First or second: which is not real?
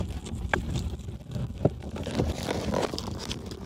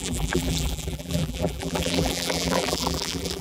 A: second